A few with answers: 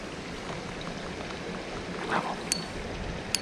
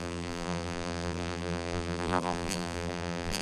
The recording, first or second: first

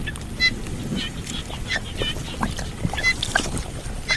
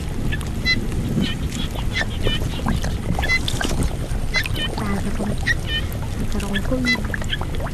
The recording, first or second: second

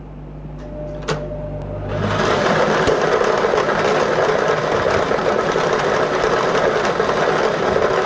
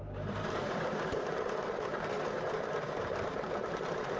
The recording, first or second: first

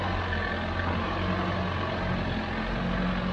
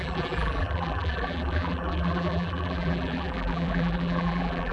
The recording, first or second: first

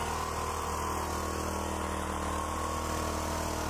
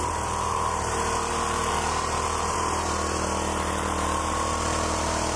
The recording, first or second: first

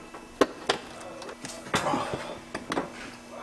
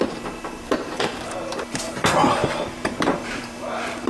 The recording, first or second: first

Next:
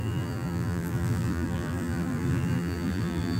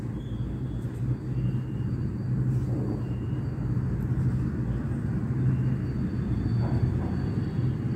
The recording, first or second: second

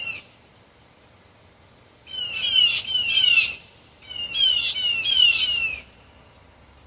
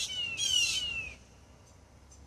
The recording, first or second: second